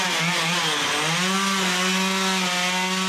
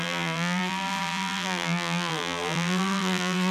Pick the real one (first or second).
first